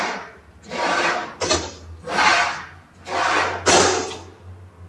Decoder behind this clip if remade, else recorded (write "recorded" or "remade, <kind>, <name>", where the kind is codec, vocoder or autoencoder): recorded